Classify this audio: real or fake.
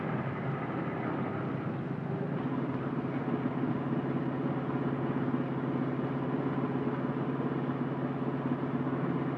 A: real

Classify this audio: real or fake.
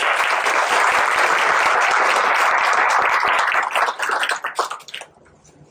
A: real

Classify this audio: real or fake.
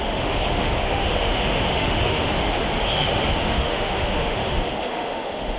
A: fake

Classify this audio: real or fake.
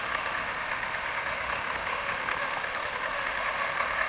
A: fake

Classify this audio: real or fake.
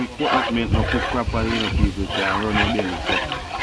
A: real